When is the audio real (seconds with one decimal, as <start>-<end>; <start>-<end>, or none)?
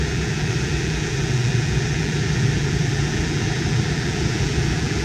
none